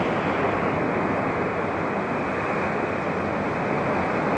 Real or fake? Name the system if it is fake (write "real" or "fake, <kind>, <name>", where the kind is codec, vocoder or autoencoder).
real